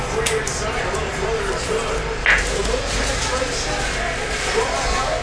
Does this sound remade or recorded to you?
recorded